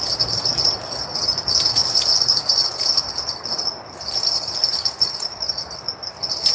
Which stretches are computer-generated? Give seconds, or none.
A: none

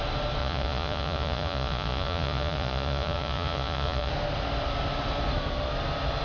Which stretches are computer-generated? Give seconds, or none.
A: 0.4-4.1 (vocoder, Vocos)

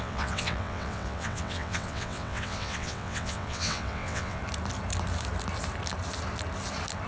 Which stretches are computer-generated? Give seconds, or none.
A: 0.0-4.4 (vocoder, WaveNeXt)